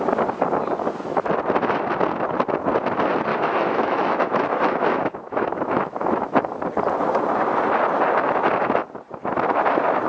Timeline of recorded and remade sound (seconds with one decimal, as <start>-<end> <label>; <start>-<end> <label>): 0.0-3.3 recorded; 3.3-6.5 remade; 6.5-10.1 recorded